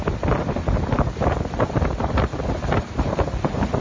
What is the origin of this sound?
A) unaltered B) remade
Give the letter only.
A